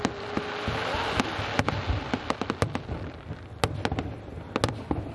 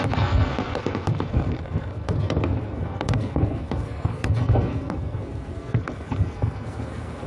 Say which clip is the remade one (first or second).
second